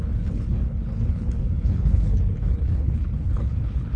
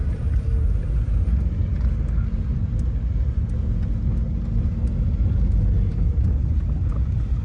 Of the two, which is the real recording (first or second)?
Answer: second